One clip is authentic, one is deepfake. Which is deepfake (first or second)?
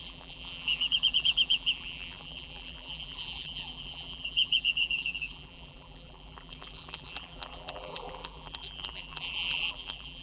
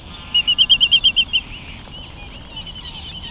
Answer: first